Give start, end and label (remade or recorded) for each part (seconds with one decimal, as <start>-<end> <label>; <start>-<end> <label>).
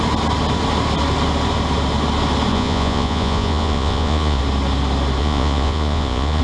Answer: 0.0-2.5 recorded; 2.5-4.4 remade; 4.4-5.2 recorded; 5.2-6.4 remade